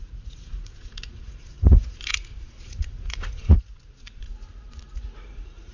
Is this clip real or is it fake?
fake